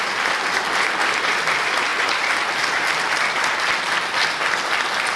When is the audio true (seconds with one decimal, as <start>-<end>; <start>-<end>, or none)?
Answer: 0.0-5.2

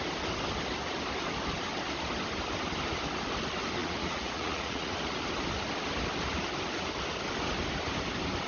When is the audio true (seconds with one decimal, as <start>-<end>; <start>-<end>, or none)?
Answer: 0.0-3.8; 4.9-8.5